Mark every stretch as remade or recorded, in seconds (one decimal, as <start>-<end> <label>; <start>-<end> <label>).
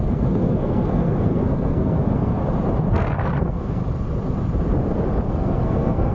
0.0-2.4 remade; 2.4-2.9 recorded; 2.9-3.8 remade; 3.8-5.3 recorded; 5.3-6.1 remade